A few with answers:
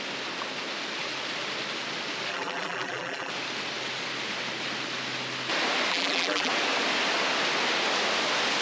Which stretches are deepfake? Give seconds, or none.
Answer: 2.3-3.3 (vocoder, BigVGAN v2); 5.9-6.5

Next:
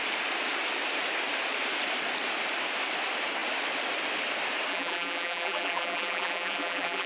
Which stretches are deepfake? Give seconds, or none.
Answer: 4.7-7.1 (vocoder, BigVGAN v2)